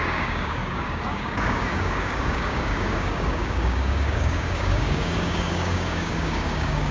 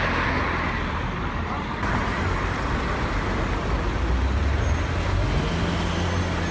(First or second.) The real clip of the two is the second